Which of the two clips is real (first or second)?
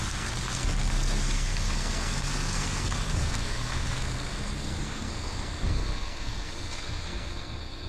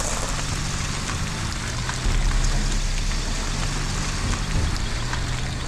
second